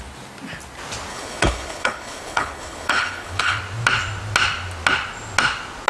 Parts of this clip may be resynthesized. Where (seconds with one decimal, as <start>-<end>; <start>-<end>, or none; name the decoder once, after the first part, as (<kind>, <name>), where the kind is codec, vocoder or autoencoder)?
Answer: 1.1-3.6 (codec, HILCodec)